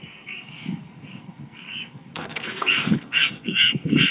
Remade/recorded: remade